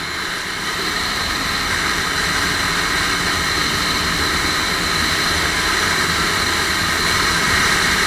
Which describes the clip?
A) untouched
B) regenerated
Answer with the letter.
A